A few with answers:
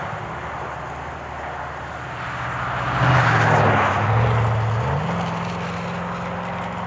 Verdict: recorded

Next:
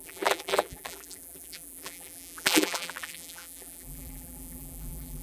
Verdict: remade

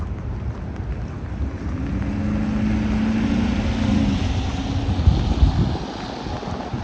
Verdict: recorded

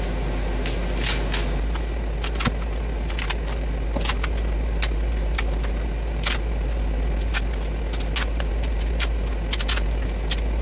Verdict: recorded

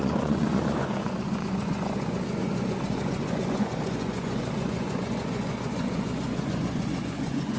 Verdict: remade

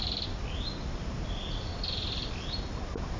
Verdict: recorded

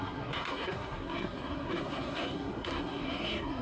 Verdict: remade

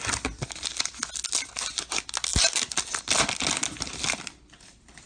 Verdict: recorded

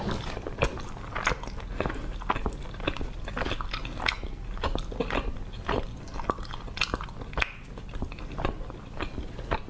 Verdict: recorded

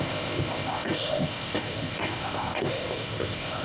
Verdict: remade